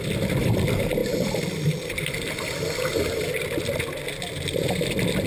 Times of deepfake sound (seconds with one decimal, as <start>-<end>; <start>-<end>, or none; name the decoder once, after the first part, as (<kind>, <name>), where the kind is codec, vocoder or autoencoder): none